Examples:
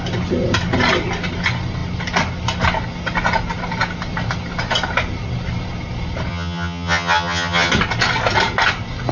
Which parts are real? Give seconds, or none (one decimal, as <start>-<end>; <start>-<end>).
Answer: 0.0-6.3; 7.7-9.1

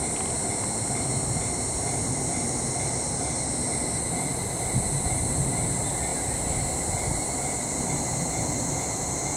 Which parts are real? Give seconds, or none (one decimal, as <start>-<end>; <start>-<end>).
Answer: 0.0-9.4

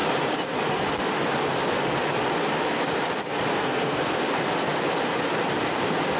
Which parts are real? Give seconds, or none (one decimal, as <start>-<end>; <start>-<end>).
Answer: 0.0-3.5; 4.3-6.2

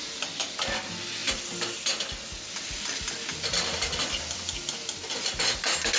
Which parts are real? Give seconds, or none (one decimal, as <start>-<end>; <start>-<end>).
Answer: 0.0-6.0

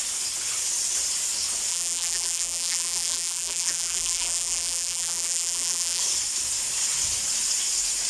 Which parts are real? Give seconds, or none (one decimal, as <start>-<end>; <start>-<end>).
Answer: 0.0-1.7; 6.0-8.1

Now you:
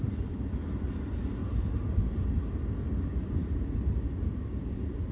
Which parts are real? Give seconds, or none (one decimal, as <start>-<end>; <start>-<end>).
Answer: 0.0-5.1

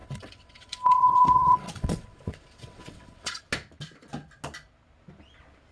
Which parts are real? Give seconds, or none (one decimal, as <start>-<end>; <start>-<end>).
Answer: 3.4-5.7